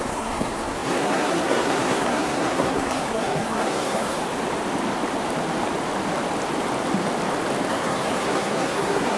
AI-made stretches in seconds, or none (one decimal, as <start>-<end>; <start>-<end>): 0.0-4.2; 7.7-9.2